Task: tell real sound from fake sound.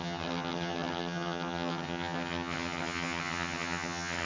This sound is fake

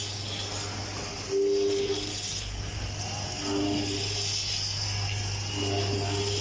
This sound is real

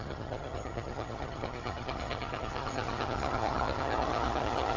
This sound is fake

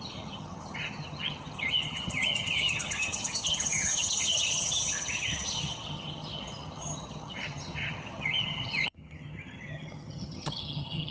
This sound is fake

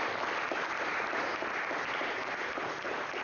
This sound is real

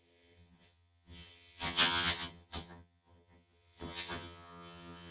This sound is fake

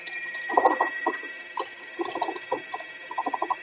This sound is real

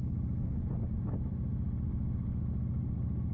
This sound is real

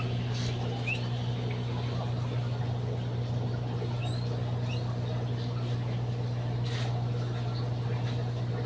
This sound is real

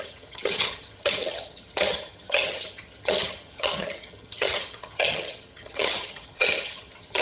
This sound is fake